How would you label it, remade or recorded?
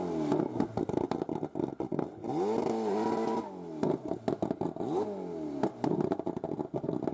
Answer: recorded